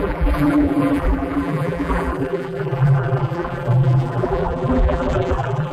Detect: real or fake fake